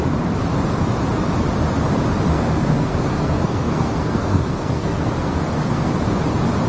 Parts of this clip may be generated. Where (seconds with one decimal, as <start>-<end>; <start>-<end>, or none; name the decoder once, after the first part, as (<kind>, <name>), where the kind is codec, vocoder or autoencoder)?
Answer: 2.3-5.9 (codec, SNAC)